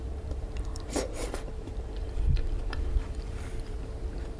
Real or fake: fake